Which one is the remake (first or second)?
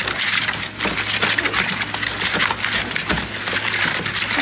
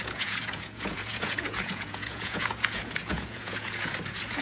second